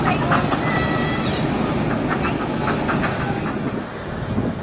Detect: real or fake real